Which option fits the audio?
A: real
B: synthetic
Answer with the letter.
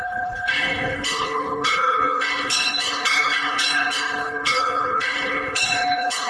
B